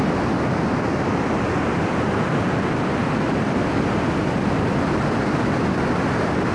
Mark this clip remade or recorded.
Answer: recorded